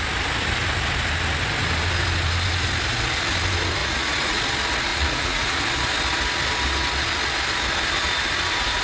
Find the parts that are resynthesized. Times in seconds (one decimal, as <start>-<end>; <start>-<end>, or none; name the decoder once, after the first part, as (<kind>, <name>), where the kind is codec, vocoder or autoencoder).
3.8-4.4 (vocoder, Vocos); 4.9-5.6